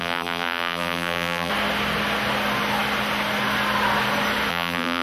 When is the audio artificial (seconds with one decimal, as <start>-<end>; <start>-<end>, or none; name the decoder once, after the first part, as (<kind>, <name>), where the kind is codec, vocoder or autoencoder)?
0.0-1.5 (vocoder, BigVGAN v2); 4.5-5.0